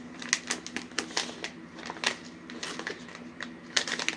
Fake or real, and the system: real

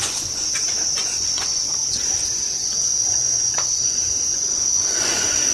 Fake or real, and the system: fake, vocoder, Vocos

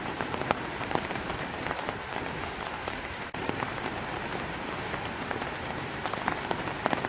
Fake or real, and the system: fake, vocoder, BigVGAN v2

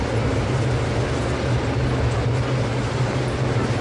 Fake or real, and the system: real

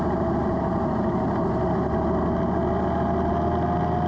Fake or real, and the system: real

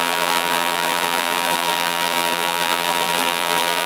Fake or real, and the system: fake, vocoder, BigVGAN v2